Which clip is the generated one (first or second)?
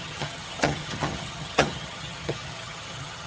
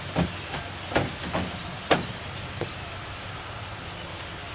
first